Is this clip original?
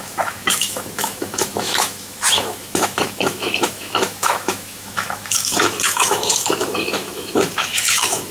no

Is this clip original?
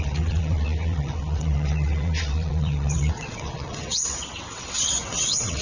no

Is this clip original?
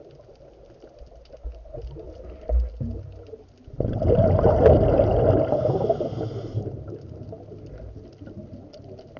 yes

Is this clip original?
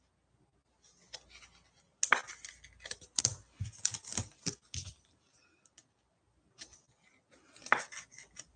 yes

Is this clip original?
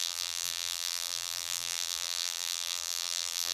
no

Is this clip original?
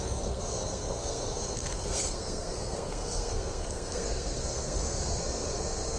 no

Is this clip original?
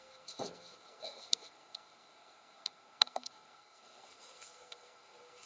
no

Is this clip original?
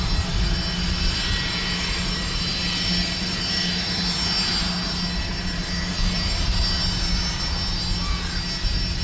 yes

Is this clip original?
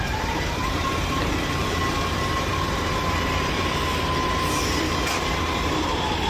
no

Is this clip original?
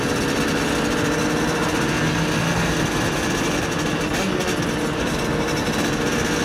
yes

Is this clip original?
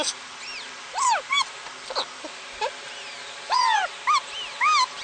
yes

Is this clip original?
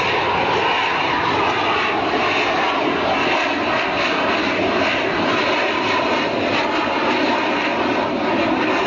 yes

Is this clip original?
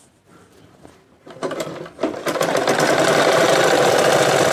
yes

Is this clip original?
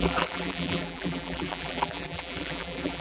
no